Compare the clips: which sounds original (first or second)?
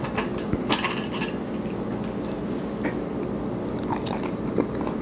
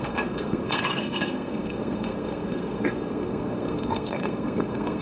first